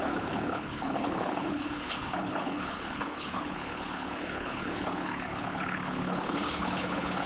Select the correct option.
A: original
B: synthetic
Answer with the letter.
B